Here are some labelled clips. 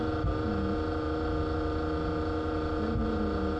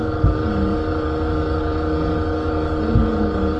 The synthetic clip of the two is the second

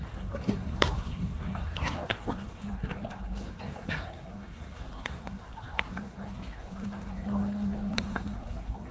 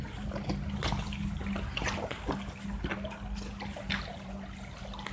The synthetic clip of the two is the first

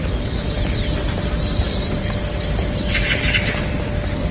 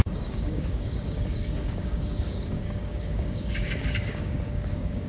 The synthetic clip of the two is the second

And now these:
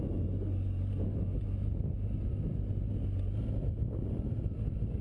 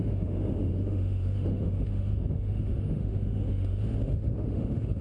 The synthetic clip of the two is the second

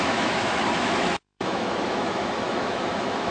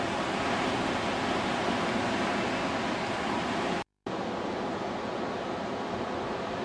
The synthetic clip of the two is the first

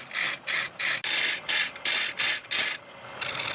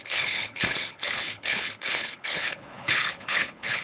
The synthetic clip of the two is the second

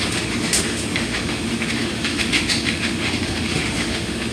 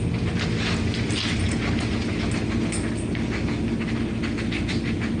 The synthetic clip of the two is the first